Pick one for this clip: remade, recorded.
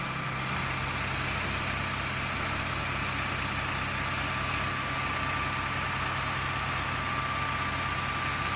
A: recorded